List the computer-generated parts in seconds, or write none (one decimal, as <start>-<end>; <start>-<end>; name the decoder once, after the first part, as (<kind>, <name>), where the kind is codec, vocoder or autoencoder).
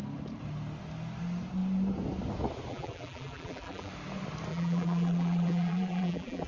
2.7-3.9 (vocoder, BigVGAN v2); 4.5-6.5